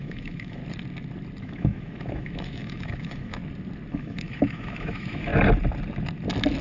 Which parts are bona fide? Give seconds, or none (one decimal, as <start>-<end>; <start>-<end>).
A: 0.6-1.4; 3.4-3.9; 5.3-6.6